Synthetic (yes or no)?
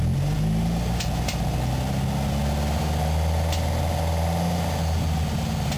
no